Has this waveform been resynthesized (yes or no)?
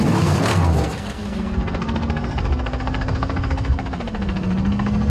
yes